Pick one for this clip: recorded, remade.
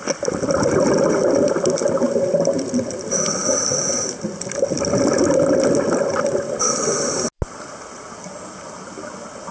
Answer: recorded